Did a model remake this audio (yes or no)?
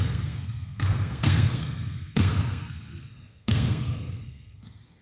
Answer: yes